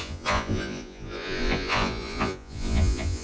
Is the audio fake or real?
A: fake